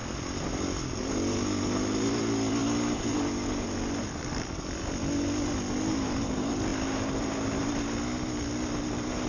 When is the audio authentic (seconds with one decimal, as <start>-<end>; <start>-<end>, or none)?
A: 0.0-9.3